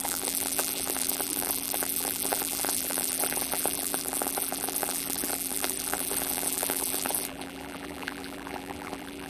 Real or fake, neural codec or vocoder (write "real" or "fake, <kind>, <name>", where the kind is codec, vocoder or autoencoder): fake, vocoder, BigVGAN v2